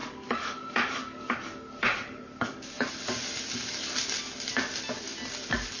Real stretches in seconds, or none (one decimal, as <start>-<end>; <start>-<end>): 2.9-5.8